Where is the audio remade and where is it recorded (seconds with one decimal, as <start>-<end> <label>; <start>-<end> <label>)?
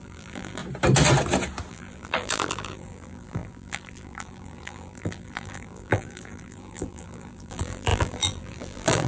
0.0-0.6 remade; 0.6-1.7 recorded; 1.7-9.1 remade